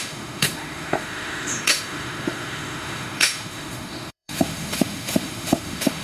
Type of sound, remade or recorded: remade